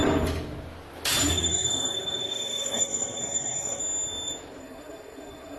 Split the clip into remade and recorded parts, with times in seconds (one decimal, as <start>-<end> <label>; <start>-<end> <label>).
0.0-1.2 recorded; 1.2-3.8 remade; 3.8-4.6 recorded; 4.6-5.6 remade